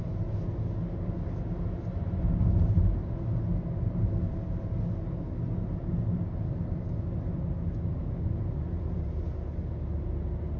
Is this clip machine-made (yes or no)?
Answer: no